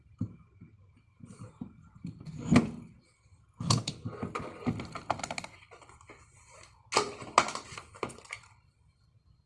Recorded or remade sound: recorded